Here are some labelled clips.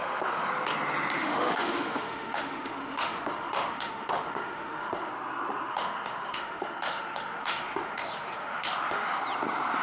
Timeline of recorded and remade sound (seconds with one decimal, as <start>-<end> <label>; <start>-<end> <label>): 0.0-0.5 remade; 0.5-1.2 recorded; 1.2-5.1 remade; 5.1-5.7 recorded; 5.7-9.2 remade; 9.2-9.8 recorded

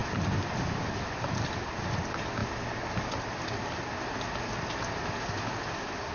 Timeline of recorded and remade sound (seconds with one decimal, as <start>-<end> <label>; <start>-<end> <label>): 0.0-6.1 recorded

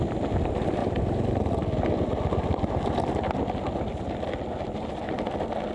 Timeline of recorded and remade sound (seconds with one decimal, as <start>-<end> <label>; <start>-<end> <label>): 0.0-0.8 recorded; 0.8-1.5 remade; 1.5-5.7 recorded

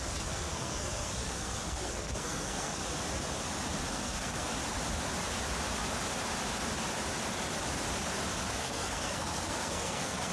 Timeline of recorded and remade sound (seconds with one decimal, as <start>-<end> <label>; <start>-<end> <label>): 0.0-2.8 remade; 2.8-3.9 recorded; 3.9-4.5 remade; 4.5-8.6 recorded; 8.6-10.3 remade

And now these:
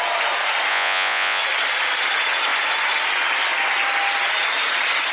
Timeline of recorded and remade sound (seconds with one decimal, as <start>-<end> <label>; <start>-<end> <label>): 0.0-0.7 recorded; 0.7-1.4 remade; 1.4-5.1 recorded